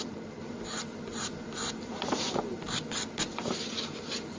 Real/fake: real